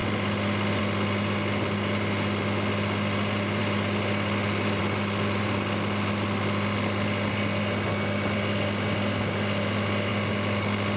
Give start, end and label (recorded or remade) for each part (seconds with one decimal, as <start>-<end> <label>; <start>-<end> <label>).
0.0-11.0 recorded